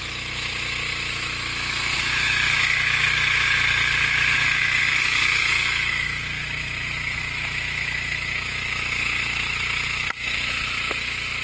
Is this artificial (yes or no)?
yes